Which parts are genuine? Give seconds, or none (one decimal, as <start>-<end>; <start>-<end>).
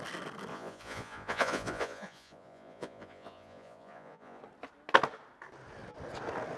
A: 0.0-0.5; 4.4-6.6